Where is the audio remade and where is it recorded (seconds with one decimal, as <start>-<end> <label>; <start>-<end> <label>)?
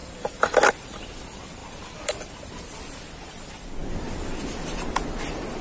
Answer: 0.0-0.7 remade; 0.7-1.6 recorded; 1.6-2.1 remade; 2.1-5.6 recorded